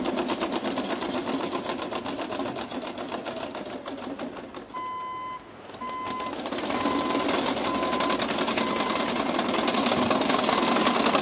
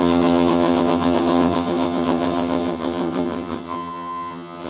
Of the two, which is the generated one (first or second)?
second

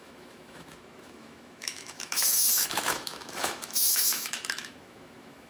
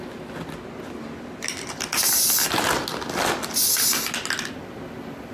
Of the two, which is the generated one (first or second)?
first